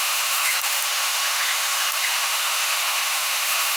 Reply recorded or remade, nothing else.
remade